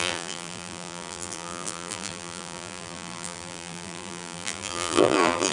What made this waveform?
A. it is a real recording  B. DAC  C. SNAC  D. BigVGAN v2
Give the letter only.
D